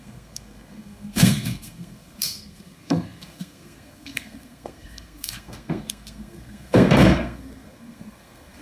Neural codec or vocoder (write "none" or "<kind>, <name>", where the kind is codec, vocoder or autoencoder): codec, SNAC